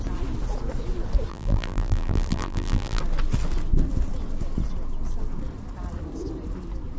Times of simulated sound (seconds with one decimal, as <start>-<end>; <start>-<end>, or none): 1.3-3.0